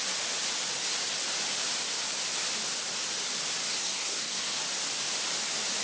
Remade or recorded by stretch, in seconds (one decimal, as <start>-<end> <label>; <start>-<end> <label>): 0.0-3.7 recorded; 3.7-4.6 remade; 4.6-5.8 recorded